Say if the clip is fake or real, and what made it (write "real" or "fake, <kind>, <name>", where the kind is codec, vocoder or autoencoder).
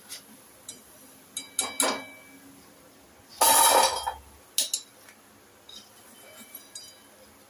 real